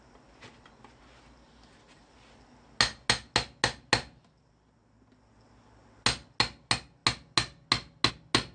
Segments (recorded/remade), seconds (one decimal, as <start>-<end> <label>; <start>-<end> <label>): 0.0-8.5 recorded